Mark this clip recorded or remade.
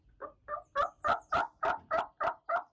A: recorded